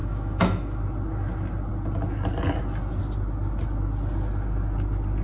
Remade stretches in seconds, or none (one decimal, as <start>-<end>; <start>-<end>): 0.0-0.8